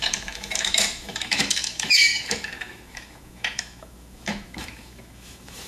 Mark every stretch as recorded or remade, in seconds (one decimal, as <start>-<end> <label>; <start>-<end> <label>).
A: 0.0-5.7 remade